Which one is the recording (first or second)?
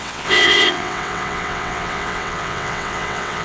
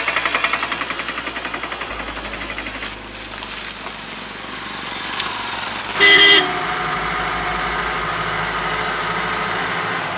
second